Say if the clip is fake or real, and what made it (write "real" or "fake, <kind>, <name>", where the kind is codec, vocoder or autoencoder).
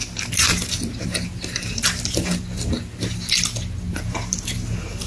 real